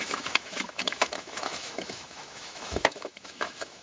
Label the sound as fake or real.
fake